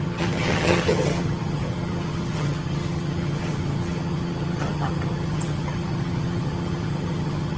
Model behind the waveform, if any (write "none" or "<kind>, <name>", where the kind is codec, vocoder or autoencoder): vocoder, HiFi-GAN